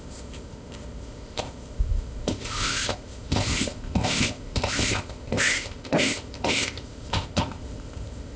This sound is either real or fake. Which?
fake